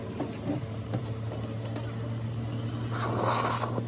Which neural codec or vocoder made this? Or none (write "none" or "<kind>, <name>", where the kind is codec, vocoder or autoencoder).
none